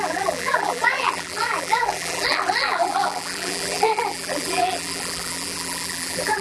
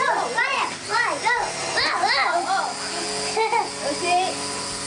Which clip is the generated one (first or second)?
first